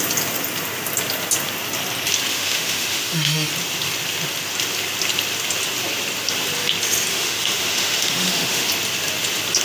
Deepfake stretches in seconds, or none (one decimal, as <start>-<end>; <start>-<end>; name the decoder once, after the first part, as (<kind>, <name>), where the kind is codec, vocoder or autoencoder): 2.3-3.5 (autoencoder, DAC-VAE); 7.1-8.7